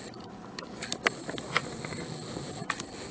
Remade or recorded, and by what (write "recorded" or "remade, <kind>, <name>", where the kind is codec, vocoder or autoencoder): recorded